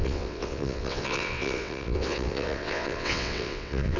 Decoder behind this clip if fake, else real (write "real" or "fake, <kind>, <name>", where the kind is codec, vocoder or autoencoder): fake, vocoder, WaveNeXt